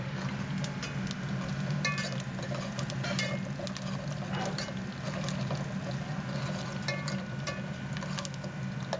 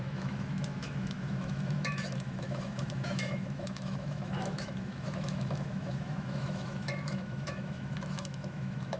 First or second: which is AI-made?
second